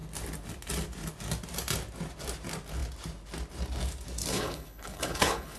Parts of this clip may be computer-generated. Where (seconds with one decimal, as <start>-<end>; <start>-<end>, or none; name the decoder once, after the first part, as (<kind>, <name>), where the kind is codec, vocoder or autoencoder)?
4.3-5.6 (codec, HILCodec)

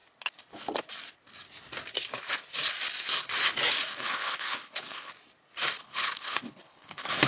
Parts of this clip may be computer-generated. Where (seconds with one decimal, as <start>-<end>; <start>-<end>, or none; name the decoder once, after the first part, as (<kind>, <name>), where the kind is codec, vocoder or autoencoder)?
3.9-5.1 (codec, HILCodec); 5.8-7.3

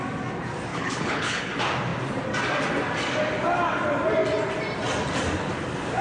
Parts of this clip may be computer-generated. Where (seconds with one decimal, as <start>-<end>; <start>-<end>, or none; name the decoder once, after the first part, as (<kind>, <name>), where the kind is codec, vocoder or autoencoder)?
0.7-1.5 (codec, HILCodec)

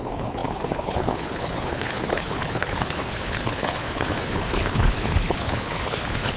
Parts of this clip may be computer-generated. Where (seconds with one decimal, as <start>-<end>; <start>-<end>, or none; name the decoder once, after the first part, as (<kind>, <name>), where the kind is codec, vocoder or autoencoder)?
0.0-6.4 (codec, HILCodec)

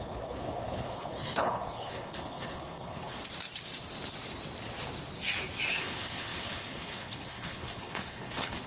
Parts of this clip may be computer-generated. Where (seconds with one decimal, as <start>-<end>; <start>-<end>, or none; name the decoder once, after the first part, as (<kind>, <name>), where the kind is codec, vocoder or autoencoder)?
0.0-3.2 (codec, HILCodec); 5.7-8.7